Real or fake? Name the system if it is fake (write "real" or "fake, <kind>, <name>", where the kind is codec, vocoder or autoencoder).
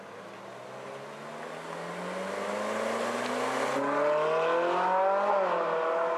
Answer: real